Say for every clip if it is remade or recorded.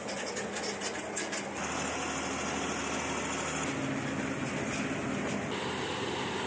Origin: recorded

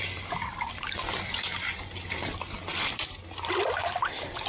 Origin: recorded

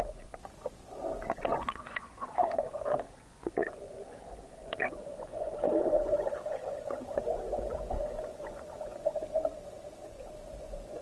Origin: remade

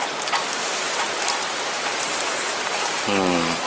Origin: recorded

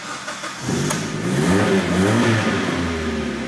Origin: recorded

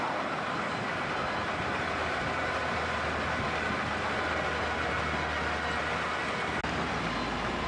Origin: recorded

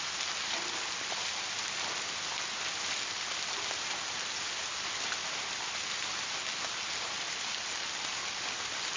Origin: recorded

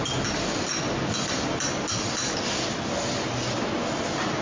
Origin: recorded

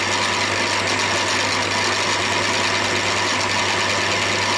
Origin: recorded